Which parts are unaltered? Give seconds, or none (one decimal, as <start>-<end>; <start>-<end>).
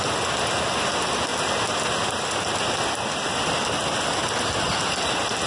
0.0-5.5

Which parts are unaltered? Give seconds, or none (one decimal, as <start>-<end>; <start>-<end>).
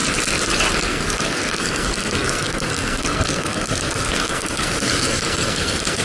0.0-0.7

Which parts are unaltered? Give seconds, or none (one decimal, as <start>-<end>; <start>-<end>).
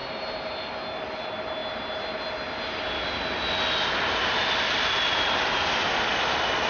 0.7-6.7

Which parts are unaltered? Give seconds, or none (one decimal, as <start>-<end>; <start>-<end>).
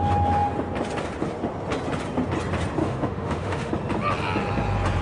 0.0-2.8; 3.7-5.0